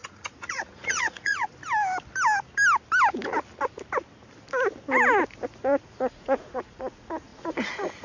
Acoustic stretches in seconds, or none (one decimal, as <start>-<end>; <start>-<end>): 1.5-5.6